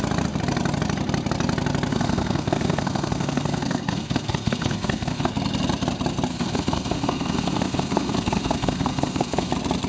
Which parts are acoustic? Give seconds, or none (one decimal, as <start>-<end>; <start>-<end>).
0.0-1.9; 5.3-6.3; 9.5-9.9